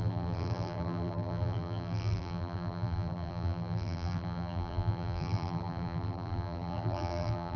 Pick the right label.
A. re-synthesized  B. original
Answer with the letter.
A